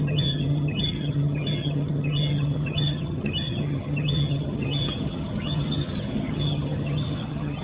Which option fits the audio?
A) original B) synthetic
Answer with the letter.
B